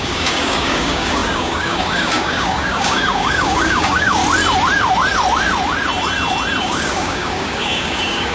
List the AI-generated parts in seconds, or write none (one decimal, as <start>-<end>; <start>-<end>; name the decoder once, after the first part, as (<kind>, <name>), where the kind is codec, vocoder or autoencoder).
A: 0.0-4.2 (codec, DAC); 6.6-8.3